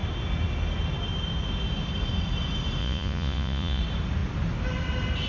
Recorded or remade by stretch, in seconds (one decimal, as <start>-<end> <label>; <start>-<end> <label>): 0.0-2.8 recorded; 2.8-3.8 remade; 3.8-5.3 recorded